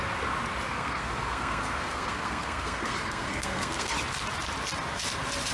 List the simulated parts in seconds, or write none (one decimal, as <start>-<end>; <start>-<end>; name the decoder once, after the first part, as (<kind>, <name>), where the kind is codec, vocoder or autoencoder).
0.7-3.9 (codec, SNAC)